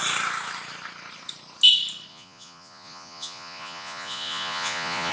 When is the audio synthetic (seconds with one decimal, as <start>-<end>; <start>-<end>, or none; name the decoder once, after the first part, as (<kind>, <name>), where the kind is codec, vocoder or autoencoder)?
2.1-5.1 (vocoder, Vocos)